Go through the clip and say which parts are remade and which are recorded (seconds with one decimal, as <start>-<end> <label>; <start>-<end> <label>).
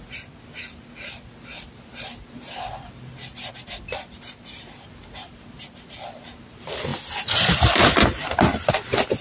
0.0-9.2 recorded